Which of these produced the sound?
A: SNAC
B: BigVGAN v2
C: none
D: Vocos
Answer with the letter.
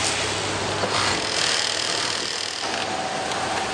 C